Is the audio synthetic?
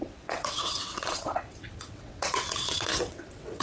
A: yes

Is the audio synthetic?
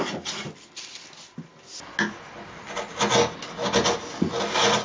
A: no